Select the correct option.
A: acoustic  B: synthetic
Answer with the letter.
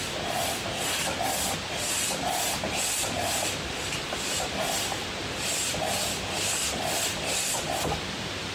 A